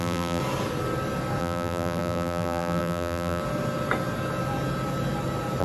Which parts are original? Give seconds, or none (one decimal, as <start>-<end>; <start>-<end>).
0.4-1.4; 3.4-5.6